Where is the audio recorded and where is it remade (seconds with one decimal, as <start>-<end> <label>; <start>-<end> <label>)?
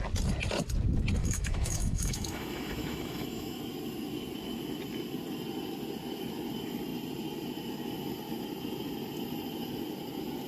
0.0-1.2 recorded; 1.2-3.6 remade; 3.6-10.5 recorded